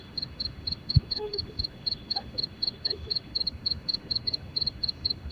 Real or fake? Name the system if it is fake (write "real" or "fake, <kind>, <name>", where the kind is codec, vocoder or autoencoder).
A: fake, autoencoder, DAC-VAE